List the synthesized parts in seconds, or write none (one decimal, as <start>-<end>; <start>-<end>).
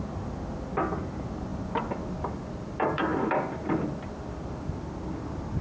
0.0-1.5; 2.3-5.6